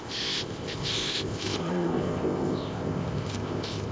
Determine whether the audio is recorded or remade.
remade